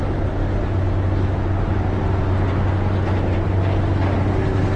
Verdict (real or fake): real